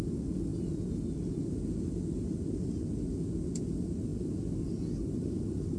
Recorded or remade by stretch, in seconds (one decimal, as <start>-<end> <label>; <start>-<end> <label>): 0.0-5.8 recorded

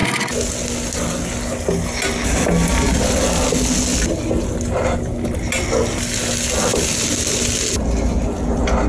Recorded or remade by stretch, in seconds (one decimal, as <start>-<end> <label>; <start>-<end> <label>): 0.0-6.7 recorded; 6.7-7.3 remade; 7.3-8.9 recorded

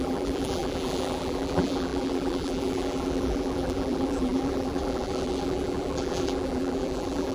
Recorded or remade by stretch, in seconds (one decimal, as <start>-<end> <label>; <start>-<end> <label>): 0.0-7.3 remade

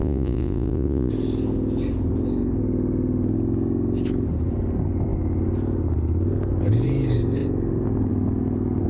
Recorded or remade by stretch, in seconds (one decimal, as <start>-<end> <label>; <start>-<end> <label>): 0.0-1.1 remade; 1.1-8.9 recorded

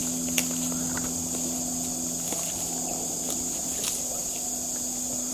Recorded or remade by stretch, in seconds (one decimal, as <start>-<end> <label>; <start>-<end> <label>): 0.0-5.3 recorded

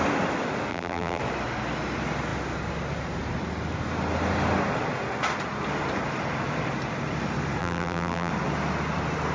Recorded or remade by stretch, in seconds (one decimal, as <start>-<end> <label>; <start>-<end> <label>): 0.0-0.7 recorded; 0.7-1.2 remade; 1.2-7.6 recorded; 7.6-8.3 remade; 8.3-9.3 recorded